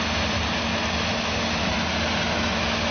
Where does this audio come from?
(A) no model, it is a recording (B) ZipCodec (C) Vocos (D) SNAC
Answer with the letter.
A